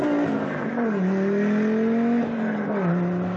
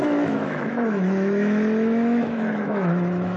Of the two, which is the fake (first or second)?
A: second